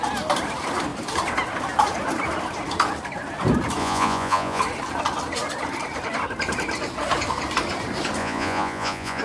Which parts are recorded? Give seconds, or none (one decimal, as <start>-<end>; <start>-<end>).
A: 0.0-3.8; 4.6-8.2